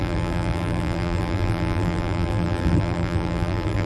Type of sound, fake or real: fake